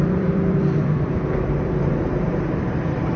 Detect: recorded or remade remade